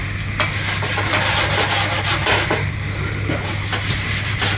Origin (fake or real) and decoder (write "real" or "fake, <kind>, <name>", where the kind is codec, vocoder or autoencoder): real